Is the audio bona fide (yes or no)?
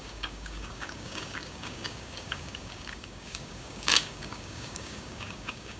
no